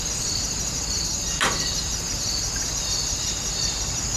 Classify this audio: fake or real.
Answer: real